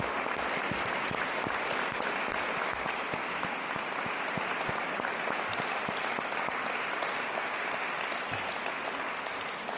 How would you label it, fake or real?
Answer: real